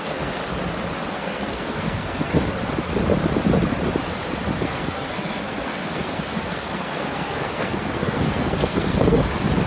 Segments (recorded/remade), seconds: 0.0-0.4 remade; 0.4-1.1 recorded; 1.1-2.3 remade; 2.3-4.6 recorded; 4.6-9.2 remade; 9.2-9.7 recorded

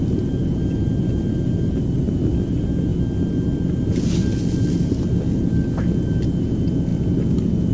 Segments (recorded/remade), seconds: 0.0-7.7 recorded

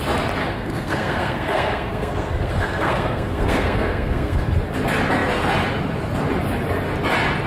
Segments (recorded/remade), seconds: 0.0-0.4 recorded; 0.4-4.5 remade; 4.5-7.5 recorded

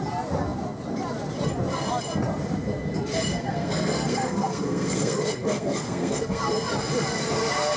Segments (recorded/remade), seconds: 0.0-3.3 recorded; 3.3-6.4 remade; 6.4-7.8 recorded